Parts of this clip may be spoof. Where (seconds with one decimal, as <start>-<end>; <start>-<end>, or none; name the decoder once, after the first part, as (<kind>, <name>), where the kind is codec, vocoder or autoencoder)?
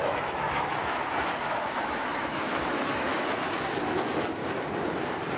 0.0-4.4 (autoencoder, DAC-VAE)